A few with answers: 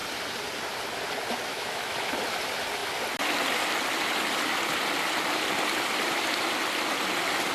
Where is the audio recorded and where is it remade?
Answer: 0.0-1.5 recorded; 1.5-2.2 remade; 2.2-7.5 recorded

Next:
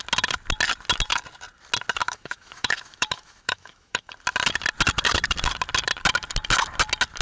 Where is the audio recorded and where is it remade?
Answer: 0.0-2.0 recorded; 2.0-4.1 remade; 4.1-7.2 recorded